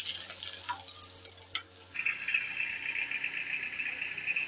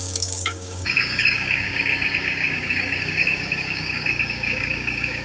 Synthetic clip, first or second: second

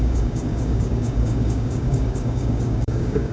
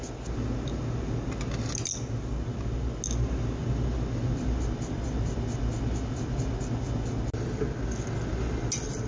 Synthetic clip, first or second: first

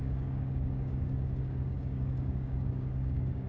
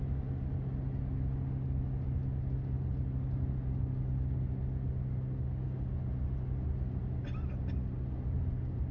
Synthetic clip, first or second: first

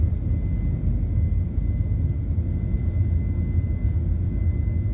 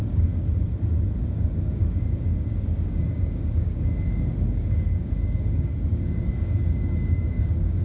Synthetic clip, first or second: second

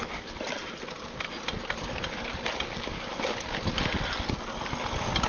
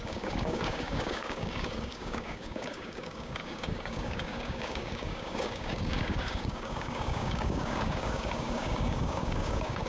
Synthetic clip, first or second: second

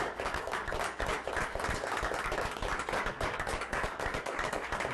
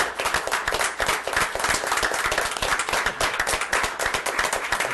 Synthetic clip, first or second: first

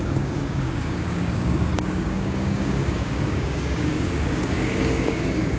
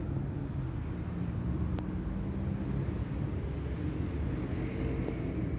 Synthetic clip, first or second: first